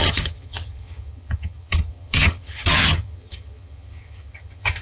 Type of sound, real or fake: fake